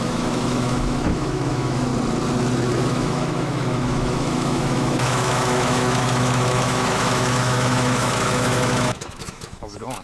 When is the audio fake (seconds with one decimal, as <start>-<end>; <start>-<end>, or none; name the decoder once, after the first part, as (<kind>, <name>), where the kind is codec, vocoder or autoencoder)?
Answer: 0.0-1.9 (autoencoder, DAC-VAE); 2.7-10.0